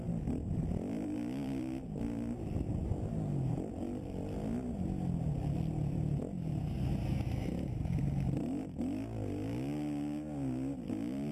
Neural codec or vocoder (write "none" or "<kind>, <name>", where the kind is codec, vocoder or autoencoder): none